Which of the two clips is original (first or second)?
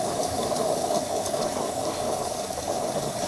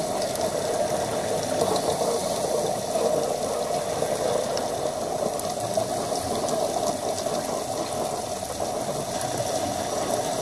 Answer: second